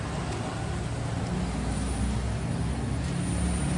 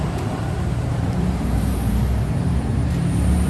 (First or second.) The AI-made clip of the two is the second